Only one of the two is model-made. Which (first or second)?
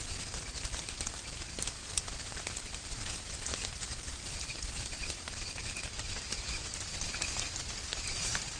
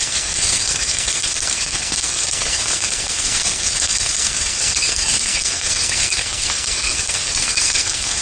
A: second